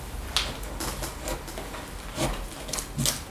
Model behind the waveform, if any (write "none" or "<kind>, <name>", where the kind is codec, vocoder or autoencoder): none